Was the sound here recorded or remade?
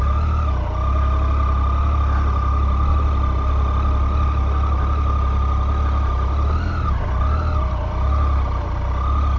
recorded